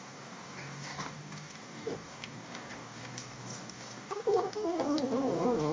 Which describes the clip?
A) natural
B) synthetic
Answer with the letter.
B